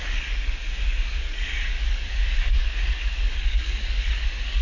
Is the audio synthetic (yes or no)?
yes